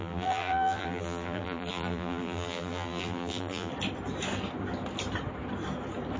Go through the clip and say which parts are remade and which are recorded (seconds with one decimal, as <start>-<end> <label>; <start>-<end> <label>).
0.0-3.7 remade; 3.7-6.2 recorded